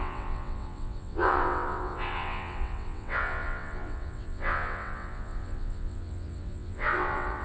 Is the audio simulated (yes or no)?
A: yes